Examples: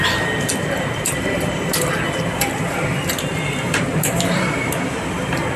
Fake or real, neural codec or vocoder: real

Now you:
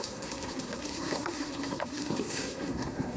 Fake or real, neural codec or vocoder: fake, codec, SNAC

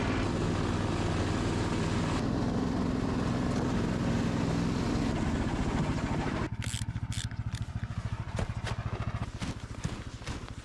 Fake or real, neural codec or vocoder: real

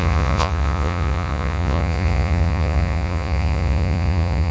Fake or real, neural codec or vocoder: fake, vocoder, Vocos